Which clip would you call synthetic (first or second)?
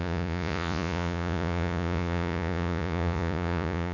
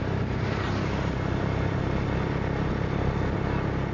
first